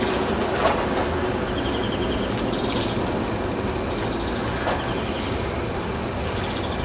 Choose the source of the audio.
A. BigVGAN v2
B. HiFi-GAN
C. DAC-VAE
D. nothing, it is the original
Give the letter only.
D